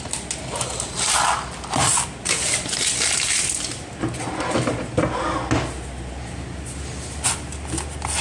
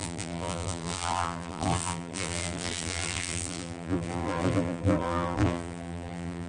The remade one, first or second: second